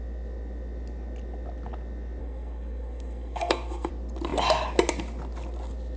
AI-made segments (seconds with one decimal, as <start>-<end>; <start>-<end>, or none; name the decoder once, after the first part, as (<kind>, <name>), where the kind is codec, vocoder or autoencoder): 2.2-3.9 (codec, SNAC)